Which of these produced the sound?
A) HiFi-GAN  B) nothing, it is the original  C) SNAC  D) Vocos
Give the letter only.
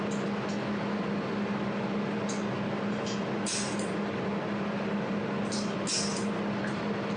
B